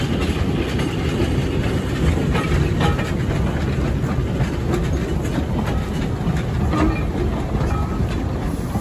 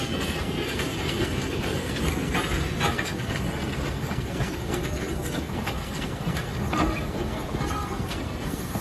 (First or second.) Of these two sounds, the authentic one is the first